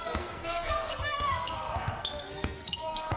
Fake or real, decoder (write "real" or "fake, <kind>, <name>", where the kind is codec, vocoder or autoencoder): fake, codec, SNAC